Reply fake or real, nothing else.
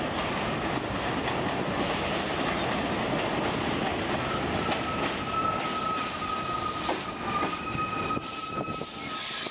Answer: real